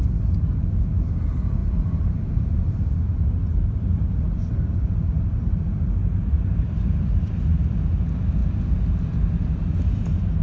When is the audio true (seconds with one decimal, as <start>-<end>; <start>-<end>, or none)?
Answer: 0.0-1.6; 2.9-6.0; 7.2-10.4